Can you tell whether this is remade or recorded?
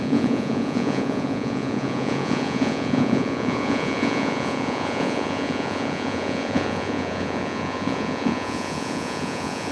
remade